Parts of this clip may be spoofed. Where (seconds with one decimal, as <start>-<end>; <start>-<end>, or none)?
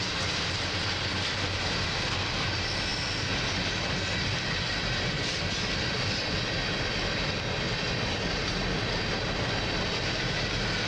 none